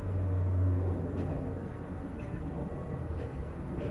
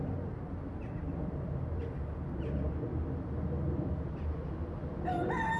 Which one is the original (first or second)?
second